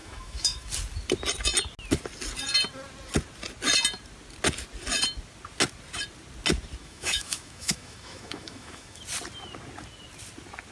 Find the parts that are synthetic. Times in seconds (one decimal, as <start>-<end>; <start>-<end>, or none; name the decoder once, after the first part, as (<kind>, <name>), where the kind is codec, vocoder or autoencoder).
0.0-0.7 (autoencoder, DAC-VAE); 6.8-9.0